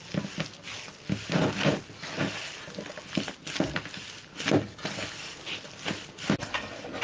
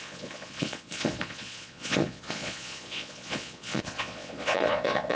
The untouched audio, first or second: first